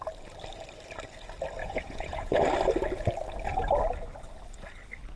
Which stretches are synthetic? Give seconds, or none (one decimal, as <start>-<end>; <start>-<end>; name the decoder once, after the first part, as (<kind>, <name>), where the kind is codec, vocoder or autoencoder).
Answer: 1.6-2.4 (vocoder, Vocos)

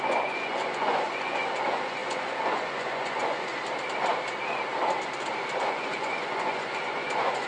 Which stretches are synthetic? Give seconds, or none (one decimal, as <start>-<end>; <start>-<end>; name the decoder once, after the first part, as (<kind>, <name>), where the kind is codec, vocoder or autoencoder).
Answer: 0.0-3.5 (vocoder, Vocos); 5.7-7.5

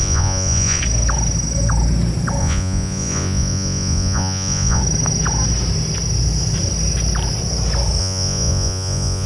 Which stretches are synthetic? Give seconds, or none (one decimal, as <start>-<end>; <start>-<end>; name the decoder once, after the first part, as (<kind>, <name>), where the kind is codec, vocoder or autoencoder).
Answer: 0.0-0.8 (vocoder, Vocos); 2.4-4.8; 8.0-9.3